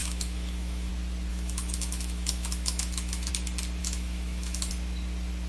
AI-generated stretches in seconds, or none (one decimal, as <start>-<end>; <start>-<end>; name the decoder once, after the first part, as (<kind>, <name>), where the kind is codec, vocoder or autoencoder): 0.0-0.9 (autoencoder, DAC-VAE); 1.3-3.3; 3.8-4.7